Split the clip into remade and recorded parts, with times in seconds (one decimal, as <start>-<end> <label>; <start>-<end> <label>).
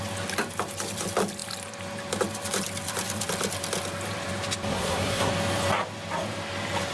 0.0-4.7 recorded; 4.7-5.3 remade; 5.3-6.9 recorded